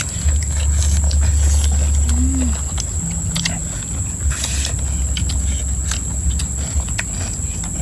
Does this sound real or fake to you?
real